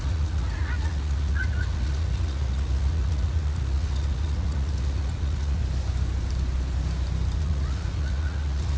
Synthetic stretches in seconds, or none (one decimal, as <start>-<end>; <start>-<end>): 0.0-5.6; 7.4-8.8

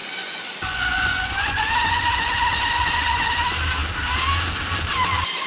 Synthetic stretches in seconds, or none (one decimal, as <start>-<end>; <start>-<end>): 0.0-3.3

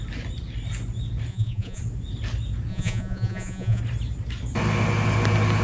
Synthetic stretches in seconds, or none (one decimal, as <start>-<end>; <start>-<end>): 1.3-1.8; 2.7-3.8

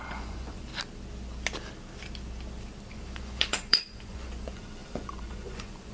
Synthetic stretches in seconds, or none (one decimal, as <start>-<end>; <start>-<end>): 0.0-0.7; 2.9-5.9

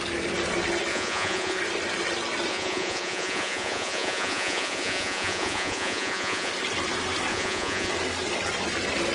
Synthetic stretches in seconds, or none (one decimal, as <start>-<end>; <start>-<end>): 0.9-1.6; 2.5-6.5; 7.3-7.9

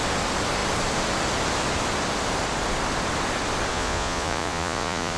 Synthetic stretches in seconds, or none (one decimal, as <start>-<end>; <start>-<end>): 3.7-5.2